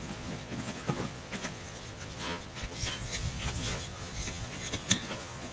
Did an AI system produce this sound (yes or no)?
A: yes